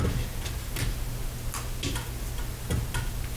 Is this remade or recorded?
recorded